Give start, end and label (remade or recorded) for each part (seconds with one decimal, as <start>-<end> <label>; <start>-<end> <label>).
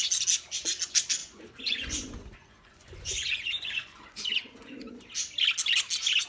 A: 0.0-1.2 recorded; 1.2-4.9 remade; 4.9-6.3 recorded